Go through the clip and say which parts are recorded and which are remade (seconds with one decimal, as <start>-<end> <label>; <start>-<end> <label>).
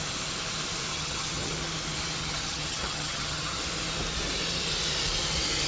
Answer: 0.0-0.9 recorded; 0.9-1.5 remade; 1.5-2.2 recorded; 2.2-3.6 remade; 3.6-5.7 recorded